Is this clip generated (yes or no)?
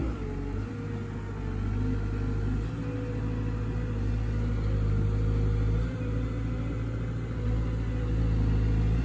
no